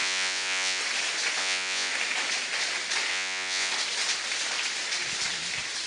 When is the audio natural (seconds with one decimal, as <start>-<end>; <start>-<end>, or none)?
0.8-1.4; 1.9-3.1; 3.7-5.9